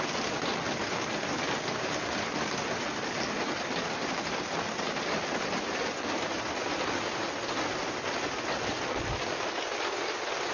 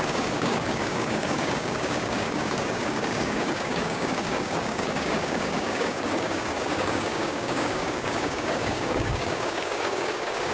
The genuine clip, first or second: first